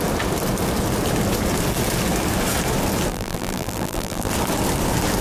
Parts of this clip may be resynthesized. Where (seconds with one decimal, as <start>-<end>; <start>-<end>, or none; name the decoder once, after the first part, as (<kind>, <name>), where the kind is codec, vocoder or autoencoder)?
3.1-4.3 (vocoder, BigVGAN v2)